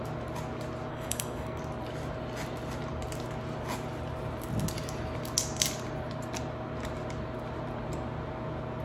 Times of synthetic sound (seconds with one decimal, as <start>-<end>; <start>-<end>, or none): 0.9-1.6